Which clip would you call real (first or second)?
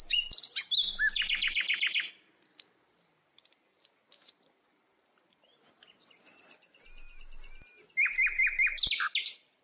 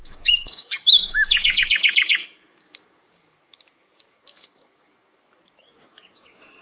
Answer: first